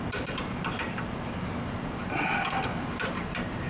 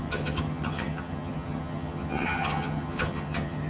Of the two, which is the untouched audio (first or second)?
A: first